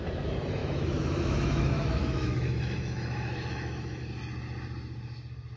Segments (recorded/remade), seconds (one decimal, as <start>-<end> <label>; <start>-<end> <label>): 0.0-0.6 recorded; 0.6-4.0 remade; 4.0-5.6 recorded